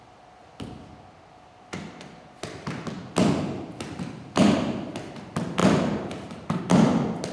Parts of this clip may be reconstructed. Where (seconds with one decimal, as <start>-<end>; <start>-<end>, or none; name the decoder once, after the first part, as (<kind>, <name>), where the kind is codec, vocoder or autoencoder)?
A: 5.6-6.6 (vocoder, BigVGAN v2)